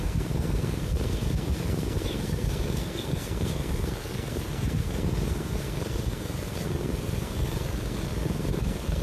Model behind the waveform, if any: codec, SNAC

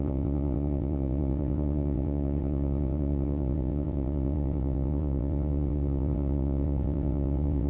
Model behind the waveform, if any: vocoder, WaveNeXt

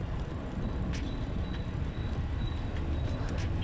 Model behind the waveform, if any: none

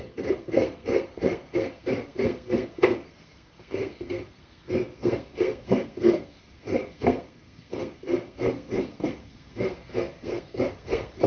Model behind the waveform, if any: codec, SNAC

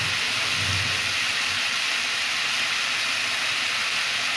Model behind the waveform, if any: none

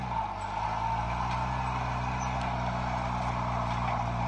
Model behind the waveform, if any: none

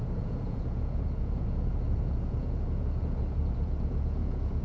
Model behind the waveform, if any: vocoder, Vocos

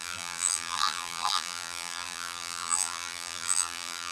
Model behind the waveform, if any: vocoder, BigVGAN v2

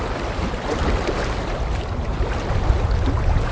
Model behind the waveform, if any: none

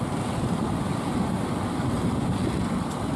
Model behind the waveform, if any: none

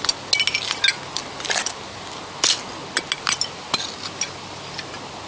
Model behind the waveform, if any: none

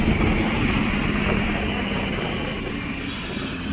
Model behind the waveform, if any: none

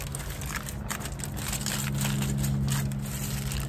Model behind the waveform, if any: none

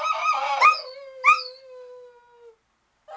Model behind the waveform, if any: none